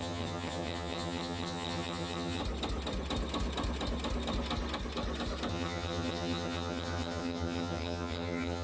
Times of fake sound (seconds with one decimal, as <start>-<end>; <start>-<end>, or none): 0.0-2.4; 5.5-8.6